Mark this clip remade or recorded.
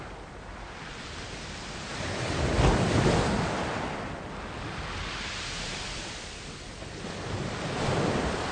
recorded